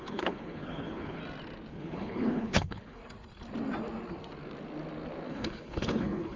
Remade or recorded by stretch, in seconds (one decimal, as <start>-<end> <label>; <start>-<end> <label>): 0.0-1.2 remade; 1.2-1.7 recorded; 1.7-3.0 remade; 3.0-5.3 recorded; 5.3-6.4 remade